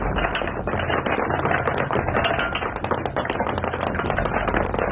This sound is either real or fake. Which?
real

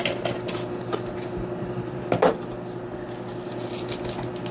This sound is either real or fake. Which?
real